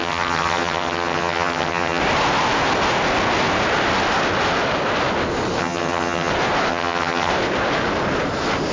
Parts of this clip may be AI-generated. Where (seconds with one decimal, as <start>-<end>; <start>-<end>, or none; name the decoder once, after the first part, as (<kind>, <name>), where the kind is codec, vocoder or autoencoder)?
0.0-2.0 (vocoder, HiFi-GAN); 5.6-6.3; 6.7-7.3